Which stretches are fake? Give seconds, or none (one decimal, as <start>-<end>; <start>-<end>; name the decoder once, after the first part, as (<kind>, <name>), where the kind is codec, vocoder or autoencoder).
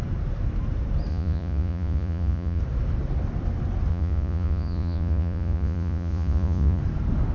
1.1-2.6 (vocoder, Vocos); 3.9-6.8